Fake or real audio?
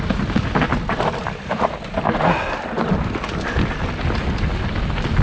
real